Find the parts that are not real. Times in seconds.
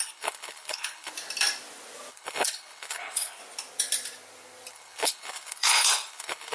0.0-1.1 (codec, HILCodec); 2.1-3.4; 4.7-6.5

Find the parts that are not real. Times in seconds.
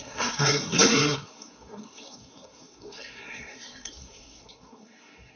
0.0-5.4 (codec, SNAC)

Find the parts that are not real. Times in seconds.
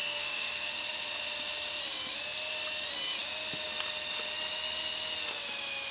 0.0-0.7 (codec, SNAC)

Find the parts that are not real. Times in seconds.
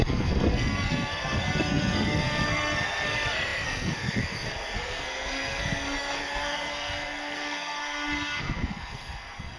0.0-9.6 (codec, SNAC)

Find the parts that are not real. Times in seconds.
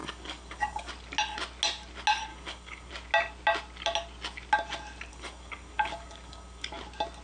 0.0-0.9 (codec, DAC); 2.3-2.9; 5.1-6.7